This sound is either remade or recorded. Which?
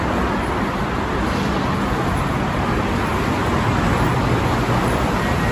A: recorded